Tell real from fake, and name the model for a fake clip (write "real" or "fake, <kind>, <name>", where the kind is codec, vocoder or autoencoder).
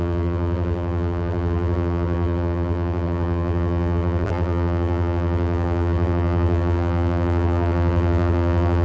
fake, vocoder, BigVGAN v2